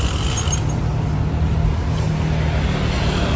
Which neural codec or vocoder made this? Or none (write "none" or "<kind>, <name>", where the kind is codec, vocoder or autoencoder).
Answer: none